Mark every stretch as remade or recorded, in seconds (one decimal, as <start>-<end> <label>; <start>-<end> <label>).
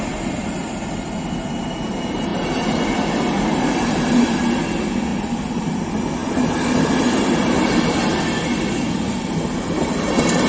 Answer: 0.0-10.5 recorded